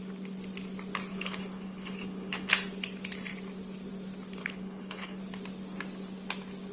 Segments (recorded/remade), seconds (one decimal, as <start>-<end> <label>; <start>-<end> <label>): 0.0-1.1 recorded; 1.1-2.5 remade; 2.5-4.4 recorded; 4.4-5.2 remade; 5.2-6.7 recorded